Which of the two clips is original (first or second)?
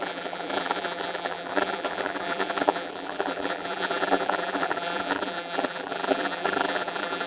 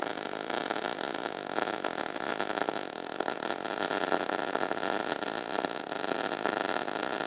second